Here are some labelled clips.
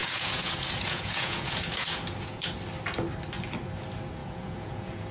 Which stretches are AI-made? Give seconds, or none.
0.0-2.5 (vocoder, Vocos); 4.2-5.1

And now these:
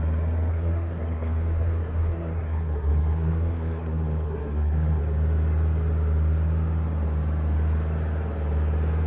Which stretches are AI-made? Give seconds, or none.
0.5-5.0 (codec, SNAC)

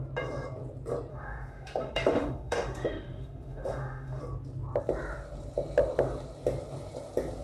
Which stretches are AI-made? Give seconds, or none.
1.1-4.2 (autoencoder, DAC-VAE)

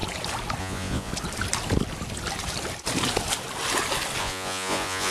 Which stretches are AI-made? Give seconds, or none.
0.6-1.1 (vocoder, Vocos); 4.2-5.1

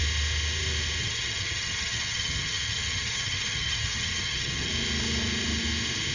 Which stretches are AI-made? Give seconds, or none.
1.0-4.7 (vocoder, HiFi-GAN)

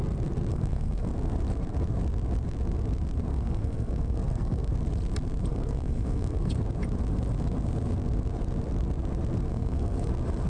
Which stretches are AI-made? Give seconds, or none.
0.5-1.1 (codec, SNAC); 3.3-4.7; 5.5-6.5; 9.5-10.1